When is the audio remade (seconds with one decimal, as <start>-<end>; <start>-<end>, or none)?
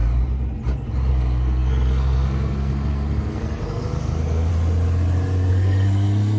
1.1-4.5; 5.5-6.4